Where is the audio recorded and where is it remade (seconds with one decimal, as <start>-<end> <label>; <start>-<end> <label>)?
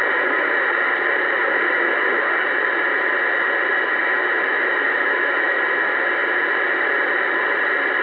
0.0-4.0 recorded; 4.0-5.6 remade; 5.6-8.0 recorded